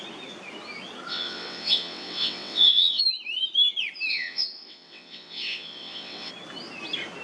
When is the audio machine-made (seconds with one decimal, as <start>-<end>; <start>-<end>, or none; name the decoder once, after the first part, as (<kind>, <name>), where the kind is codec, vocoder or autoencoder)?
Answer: 1.1-3.0 (vocoder, WaveNeXt); 4.1-6.3